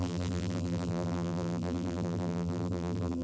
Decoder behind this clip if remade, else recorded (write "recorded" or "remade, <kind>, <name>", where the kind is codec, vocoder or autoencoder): remade, vocoder, BigVGAN v2